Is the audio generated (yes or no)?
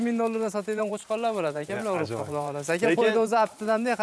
yes